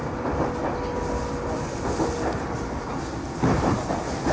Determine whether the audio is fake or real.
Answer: real